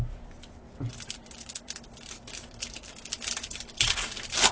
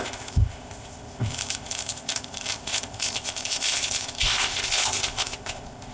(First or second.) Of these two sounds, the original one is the first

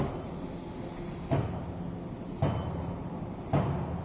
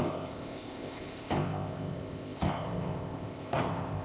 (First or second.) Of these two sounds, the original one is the first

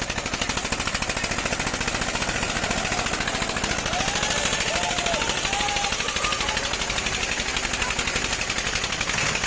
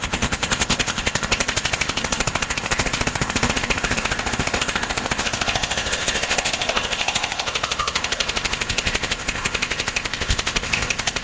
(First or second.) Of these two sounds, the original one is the first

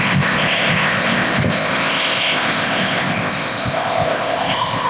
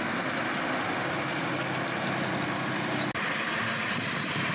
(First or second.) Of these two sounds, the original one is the second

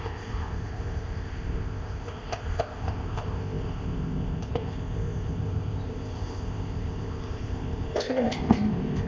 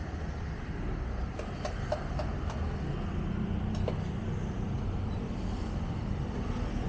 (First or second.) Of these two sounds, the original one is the second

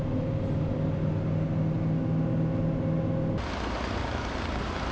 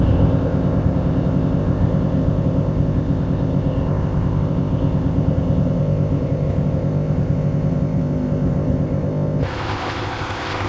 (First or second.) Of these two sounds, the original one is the first